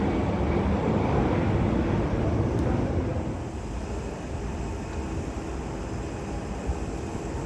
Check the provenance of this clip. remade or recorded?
recorded